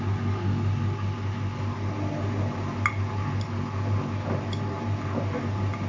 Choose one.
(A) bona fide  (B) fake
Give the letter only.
A